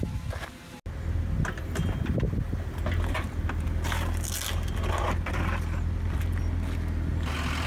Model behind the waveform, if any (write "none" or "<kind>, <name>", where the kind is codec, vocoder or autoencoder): none